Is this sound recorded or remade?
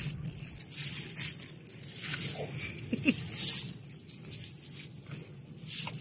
recorded